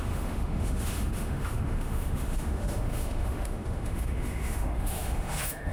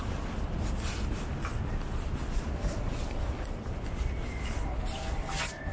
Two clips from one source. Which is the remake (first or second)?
first